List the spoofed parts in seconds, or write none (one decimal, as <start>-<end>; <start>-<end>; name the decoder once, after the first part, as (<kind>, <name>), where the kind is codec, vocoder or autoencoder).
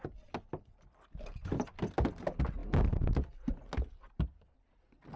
none